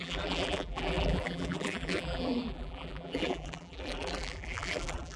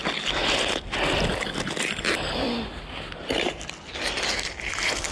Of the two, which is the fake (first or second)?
first